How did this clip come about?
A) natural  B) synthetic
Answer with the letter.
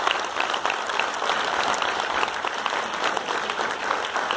B